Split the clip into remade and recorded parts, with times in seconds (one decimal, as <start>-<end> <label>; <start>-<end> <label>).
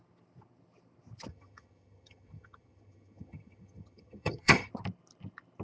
0.0-1.3 recorded; 1.3-4.7 remade; 4.7-5.6 recorded